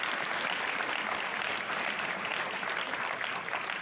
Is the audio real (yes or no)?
yes